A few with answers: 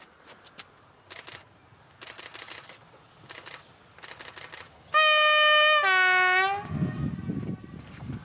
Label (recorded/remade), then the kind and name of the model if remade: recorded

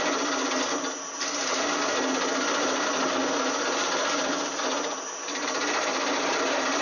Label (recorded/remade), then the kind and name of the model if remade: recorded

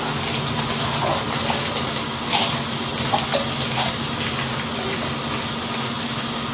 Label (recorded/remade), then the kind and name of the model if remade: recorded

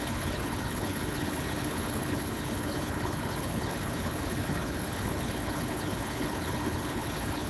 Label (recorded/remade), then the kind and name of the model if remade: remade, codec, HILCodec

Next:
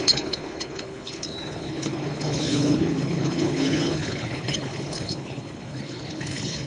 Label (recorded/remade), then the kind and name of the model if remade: remade, codec, HILCodec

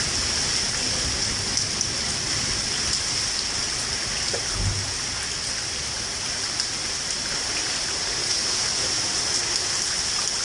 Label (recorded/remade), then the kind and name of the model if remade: recorded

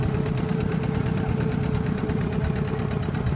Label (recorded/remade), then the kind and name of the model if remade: recorded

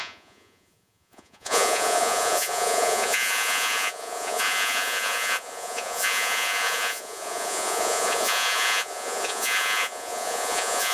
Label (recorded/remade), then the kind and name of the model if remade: remade, vocoder, Vocos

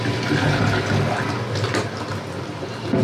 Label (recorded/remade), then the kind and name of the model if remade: recorded